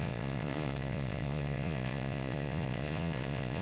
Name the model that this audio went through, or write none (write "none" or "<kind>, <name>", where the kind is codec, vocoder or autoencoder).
vocoder, Vocos